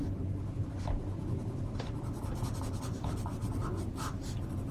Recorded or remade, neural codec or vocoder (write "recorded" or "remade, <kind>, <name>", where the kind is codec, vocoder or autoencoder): recorded